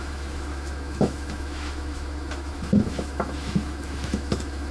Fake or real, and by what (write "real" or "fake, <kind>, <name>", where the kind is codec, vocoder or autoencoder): fake, autoencoder, DAC-VAE